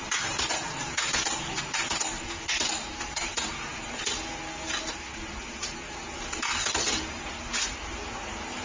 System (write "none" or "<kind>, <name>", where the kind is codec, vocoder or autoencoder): none